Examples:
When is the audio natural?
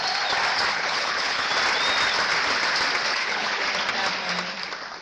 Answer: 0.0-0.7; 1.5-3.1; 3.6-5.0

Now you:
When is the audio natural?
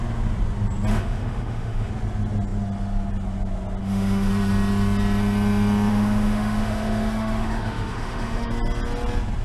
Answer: 0.0-0.9; 1.9-3.8; 4.3-5.9; 8.5-9.4